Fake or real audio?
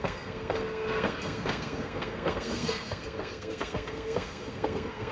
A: fake